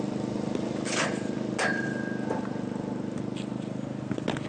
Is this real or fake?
real